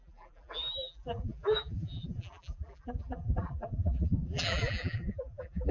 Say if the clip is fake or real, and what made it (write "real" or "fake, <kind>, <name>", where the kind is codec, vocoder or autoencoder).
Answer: fake, vocoder, BigVGAN v2